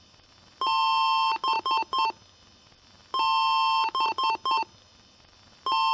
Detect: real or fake real